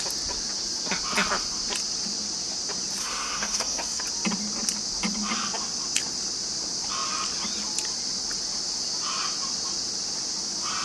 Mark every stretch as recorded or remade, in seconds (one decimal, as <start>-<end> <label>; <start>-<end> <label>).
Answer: 0.0-3.0 recorded; 3.0-4.0 remade; 4.0-10.8 recorded